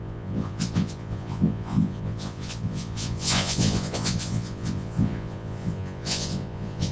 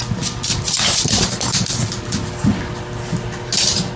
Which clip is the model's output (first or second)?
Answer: first